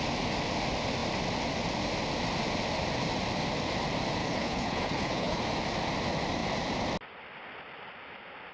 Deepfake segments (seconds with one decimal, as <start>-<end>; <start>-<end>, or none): 4.2-5.4

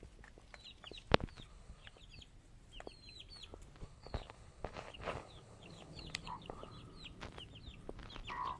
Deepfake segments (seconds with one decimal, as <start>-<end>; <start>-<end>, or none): 1.5-2.0; 3.8-6.7

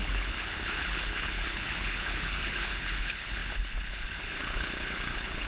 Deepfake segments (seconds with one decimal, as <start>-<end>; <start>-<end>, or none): 0.0-5.5

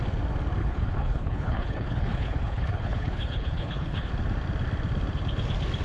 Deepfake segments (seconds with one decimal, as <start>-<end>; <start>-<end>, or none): 0.6-4.1

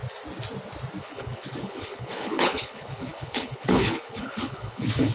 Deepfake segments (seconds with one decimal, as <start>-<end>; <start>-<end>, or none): 1.0-5.1